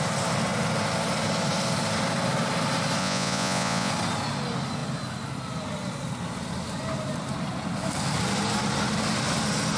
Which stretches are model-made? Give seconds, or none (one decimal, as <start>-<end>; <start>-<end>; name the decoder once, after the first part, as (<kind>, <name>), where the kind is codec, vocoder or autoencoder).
3.0-3.9 (vocoder, Vocos)